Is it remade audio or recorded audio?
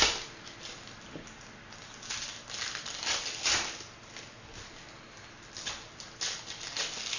recorded